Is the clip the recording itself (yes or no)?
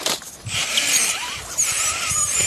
no